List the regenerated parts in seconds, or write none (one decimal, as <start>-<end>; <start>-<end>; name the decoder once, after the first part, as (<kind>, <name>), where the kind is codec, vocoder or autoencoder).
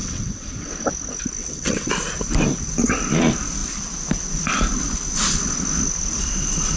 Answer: 0.0-0.7 (vocoder, WaveNeXt); 1.4-1.9